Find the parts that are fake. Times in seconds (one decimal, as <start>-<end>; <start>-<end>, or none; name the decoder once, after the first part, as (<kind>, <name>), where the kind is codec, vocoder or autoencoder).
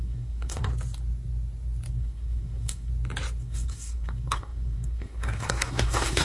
0.0-0.7 (codec, SNAC); 1.9-2.9; 3.4-6.2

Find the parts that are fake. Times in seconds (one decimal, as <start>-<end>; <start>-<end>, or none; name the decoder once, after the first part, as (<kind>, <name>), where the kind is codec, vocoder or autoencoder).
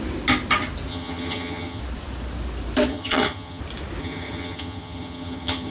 0.9-1.8 (vocoder, HiFi-GAN); 2.9-3.6; 4.0-5.7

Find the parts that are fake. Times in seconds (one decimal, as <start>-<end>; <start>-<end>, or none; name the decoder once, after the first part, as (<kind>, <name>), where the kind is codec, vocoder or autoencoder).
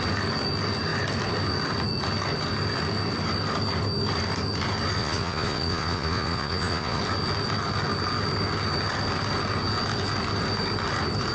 5.0-7.0 (vocoder, Vocos)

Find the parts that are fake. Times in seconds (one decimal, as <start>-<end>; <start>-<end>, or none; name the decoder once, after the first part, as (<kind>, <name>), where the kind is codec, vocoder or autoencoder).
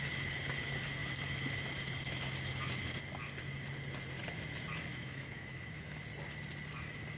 4.9-6.0 (autoencoder, DAC-VAE)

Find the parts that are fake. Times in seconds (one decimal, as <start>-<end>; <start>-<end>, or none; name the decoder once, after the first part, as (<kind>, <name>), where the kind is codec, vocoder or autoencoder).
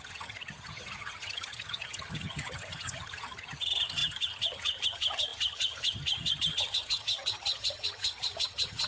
0.0-8.9 (vocoder, HiFi-GAN)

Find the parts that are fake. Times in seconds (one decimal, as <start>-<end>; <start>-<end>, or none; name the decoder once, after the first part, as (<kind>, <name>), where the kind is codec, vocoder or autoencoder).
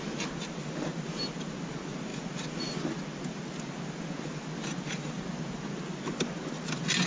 none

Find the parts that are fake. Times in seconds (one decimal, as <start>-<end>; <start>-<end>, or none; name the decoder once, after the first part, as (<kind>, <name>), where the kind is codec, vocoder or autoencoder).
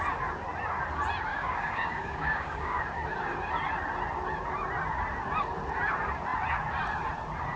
1.3-2.8 (codec, DAC)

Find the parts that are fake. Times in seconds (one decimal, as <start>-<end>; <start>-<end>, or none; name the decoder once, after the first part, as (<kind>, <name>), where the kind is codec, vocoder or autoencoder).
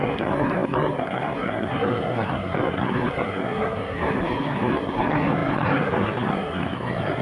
0.0-7.2 (codec, SNAC)